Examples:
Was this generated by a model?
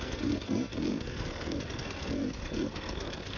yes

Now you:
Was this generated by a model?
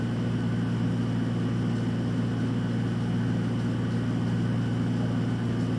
no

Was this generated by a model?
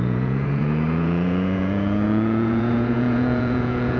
yes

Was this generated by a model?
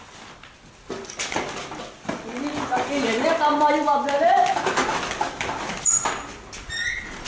no